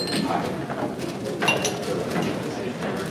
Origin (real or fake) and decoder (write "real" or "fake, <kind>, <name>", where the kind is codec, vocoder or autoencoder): real